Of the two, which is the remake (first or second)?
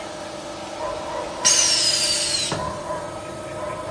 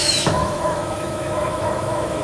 second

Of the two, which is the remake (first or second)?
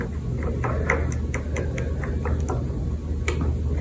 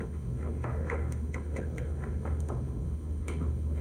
second